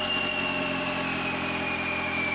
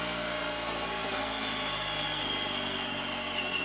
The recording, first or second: first